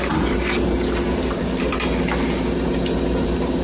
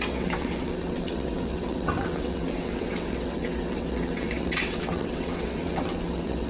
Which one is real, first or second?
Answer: first